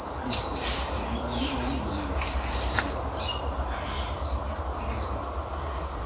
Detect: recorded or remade remade